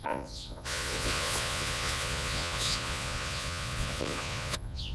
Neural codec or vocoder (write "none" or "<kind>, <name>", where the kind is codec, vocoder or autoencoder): vocoder, Vocos